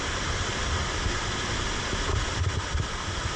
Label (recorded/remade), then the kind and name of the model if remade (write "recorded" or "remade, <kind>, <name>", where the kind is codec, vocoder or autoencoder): recorded